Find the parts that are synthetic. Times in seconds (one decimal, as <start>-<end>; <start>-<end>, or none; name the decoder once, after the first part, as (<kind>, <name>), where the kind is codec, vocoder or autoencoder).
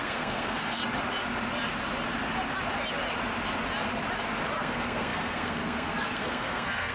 0.0-0.8 (codec, SNAC); 4.6-6.9